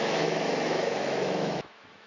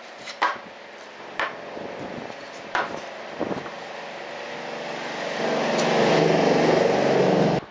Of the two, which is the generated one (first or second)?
first